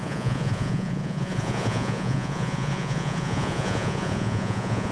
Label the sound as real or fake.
fake